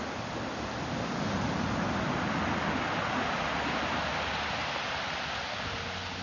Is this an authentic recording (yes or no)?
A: yes